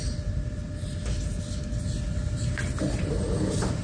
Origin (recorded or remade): recorded